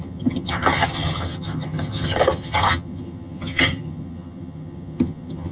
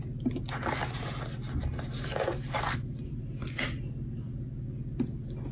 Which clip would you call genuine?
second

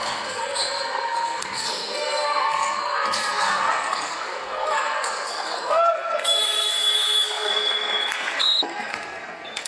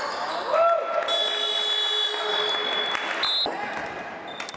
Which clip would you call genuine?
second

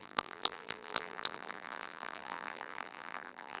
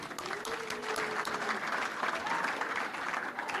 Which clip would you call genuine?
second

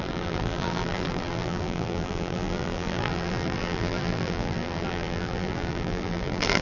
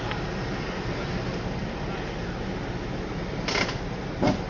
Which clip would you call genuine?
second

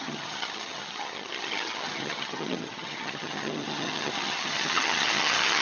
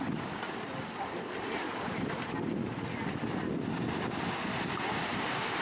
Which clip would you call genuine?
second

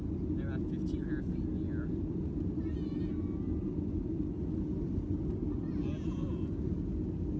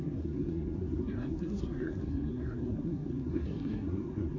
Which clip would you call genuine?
first